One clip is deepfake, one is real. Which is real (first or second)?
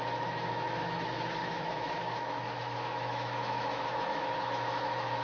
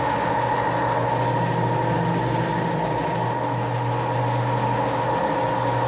second